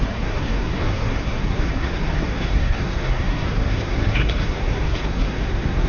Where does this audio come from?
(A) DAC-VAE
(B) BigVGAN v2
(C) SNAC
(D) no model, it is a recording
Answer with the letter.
C